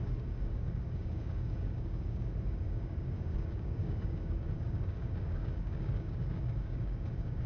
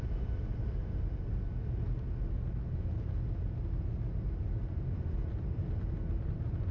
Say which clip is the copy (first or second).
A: first